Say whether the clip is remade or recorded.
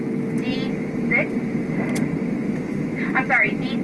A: recorded